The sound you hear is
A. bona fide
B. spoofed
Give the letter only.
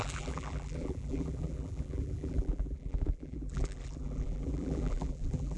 B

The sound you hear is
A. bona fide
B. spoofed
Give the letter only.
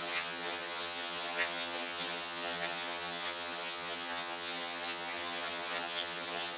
B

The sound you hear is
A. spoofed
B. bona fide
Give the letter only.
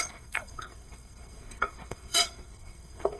A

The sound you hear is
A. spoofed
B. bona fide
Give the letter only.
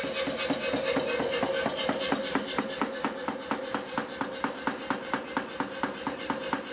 B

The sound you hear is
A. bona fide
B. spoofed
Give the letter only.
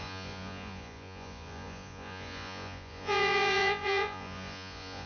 B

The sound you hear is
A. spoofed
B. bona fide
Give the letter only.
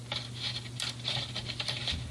B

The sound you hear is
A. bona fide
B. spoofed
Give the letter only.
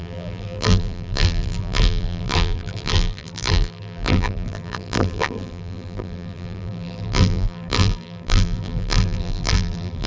B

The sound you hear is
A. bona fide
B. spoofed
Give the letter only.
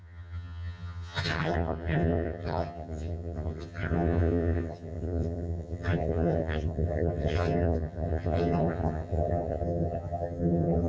B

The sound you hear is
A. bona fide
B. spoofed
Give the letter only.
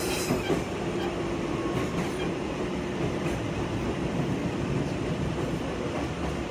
A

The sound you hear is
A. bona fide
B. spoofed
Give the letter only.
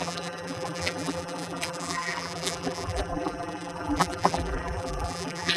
B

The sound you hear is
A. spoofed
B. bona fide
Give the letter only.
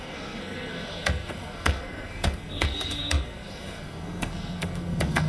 A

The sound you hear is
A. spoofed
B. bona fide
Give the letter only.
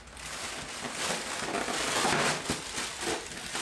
B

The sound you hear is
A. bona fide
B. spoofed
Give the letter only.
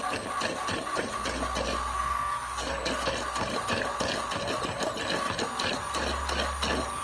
A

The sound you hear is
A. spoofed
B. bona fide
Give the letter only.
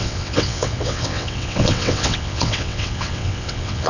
A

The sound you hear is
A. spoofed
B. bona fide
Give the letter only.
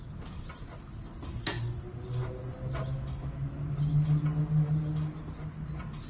B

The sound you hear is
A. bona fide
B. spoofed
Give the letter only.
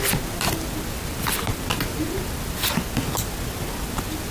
A